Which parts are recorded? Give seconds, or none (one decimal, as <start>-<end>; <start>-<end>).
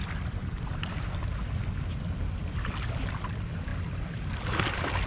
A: 0.0-5.1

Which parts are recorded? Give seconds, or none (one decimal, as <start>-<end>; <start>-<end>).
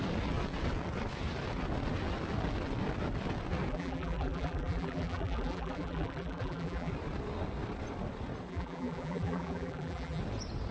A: 0.0-3.7; 6.9-8.5; 10.2-10.7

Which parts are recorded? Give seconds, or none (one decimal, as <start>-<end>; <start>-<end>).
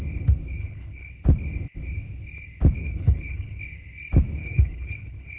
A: 0.0-0.6; 1.1-2.8; 3.6-4.4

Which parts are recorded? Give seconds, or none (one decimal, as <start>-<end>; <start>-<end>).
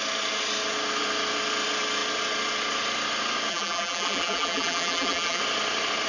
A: 0.0-3.5; 5.4-6.1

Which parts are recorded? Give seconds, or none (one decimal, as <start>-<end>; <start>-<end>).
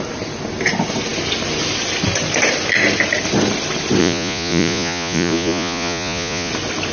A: 0.0-4.0; 6.5-6.9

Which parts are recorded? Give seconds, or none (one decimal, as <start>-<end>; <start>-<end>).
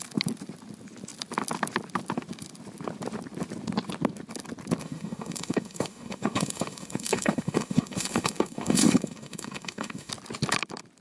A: 0.0-4.8; 10.1-11.0